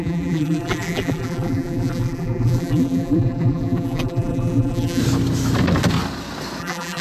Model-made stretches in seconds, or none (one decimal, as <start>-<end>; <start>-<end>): 0.0-5.0; 6.6-7.0